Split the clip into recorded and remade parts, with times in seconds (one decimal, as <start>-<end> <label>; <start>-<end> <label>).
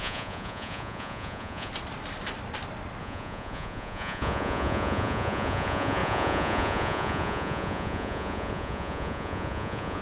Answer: 0.0-1.7 remade; 1.7-3.0 recorded; 3.0-10.0 remade